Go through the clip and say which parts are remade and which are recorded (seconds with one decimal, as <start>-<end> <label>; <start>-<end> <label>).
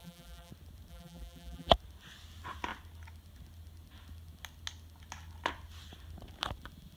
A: 0.0-0.5 remade; 0.5-0.9 recorded; 0.9-1.7 remade; 1.7-7.0 recorded